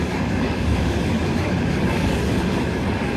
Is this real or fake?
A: fake